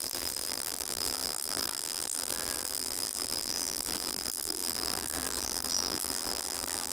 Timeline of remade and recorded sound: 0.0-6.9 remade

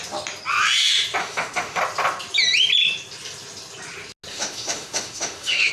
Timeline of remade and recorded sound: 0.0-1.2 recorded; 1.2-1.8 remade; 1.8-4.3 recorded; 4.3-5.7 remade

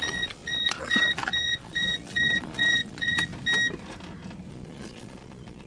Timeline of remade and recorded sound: 0.0-3.3 remade; 3.3-4.5 recorded; 4.5-5.7 remade